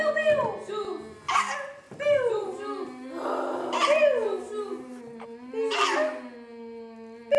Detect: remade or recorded recorded